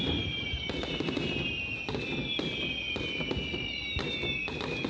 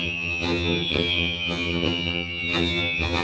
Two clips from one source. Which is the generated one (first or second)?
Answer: second